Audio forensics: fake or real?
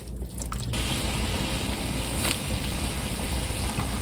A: real